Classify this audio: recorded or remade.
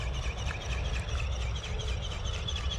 recorded